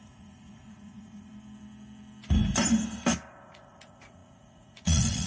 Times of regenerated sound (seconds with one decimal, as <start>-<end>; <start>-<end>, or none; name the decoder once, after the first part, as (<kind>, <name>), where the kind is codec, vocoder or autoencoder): 0.0-1.3 (vocoder, Vocos); 3.3-5.3